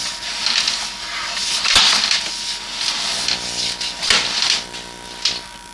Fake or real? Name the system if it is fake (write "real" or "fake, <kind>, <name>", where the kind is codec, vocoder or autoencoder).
real